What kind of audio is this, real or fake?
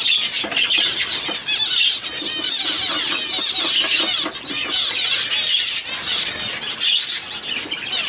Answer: real